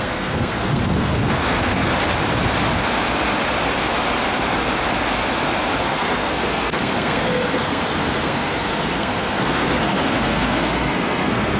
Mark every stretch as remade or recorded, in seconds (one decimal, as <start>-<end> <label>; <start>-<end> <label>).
0.0-1.9 remade; 1.9-5.8 recorded; 5.8-11.6 remade